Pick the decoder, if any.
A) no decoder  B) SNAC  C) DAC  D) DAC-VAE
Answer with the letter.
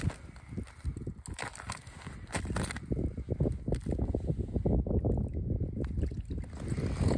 A